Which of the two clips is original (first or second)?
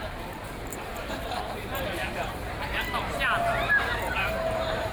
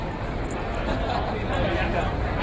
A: second